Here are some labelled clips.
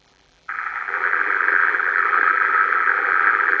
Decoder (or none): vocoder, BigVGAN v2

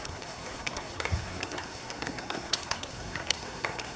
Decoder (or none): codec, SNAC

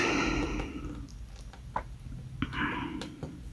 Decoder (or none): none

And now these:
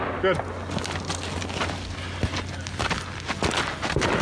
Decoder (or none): none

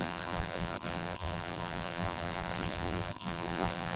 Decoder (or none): vocoder, BigVGAN v2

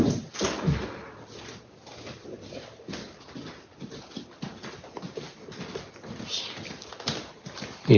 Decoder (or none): none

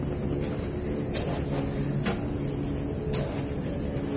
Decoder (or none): none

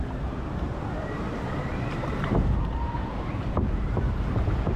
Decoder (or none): vocoder, BigVGAN v2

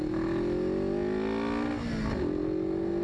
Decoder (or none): none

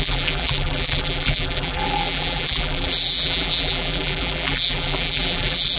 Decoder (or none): vocoder, BigVGAN v2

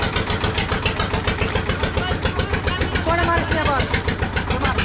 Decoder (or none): none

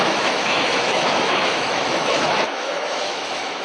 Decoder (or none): autoencoder, DAC-VAE